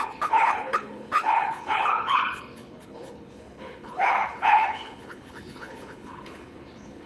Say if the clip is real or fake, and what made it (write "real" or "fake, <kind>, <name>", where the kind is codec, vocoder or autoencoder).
fake, codec, HILCodec